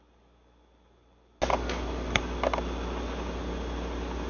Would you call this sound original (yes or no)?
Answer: yes